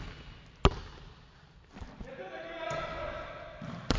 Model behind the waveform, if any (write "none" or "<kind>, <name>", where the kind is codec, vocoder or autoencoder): none